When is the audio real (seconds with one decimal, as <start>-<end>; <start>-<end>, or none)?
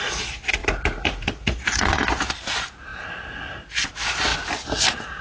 0.0-0.6; 2.1-2.9; 3.9-5.2